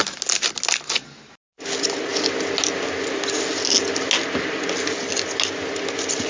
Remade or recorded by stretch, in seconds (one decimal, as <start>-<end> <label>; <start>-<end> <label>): 0.0-6.3 recorded